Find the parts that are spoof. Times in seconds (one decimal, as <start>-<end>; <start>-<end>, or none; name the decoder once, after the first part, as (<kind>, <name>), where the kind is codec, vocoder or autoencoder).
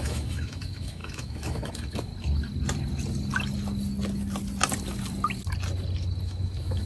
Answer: 0.0-2.1 (autoencoder, DAC-VAE); 6.2-6.9